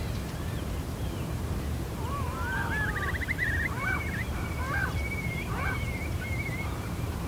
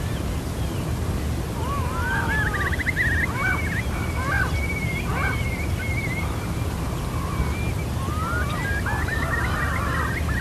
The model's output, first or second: first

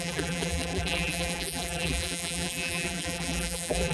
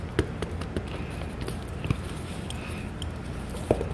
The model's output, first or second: first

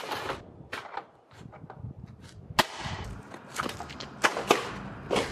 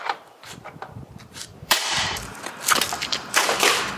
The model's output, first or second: second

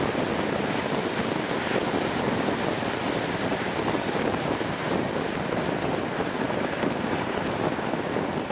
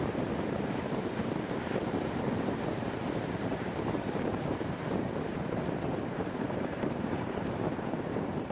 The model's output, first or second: second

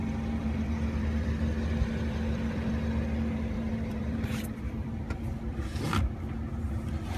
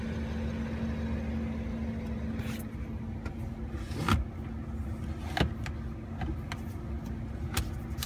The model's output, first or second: first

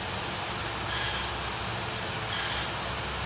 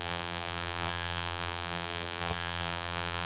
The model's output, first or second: second